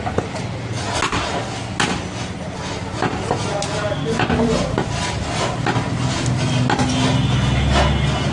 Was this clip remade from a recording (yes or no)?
no